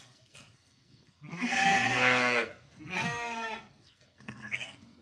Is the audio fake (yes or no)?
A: yes